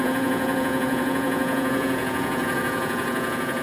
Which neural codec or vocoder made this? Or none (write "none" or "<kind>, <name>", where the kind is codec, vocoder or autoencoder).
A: vocoder, Vocos